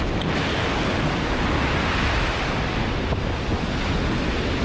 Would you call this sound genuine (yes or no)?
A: yes